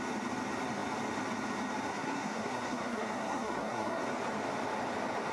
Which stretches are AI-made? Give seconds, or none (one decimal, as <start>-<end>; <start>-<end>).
1.9-4.0